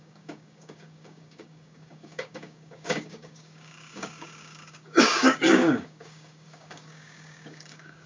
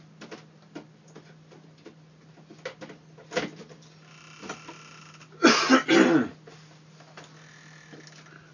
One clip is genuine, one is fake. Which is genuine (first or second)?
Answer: second